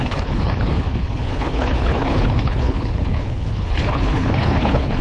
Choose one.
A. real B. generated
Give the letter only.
B